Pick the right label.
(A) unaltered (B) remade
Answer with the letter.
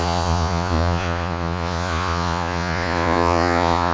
B